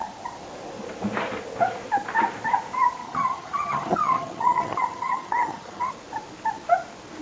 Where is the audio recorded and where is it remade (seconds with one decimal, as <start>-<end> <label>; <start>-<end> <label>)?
0.0-3.0 recorded; 3.0-5.9 remade; 5.9-7.2 recorded